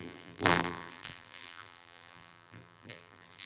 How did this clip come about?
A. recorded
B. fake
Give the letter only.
B